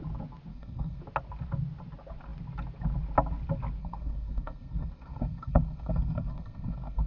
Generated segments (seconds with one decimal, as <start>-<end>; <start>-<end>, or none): 0.5-1.0; 3.8-7.1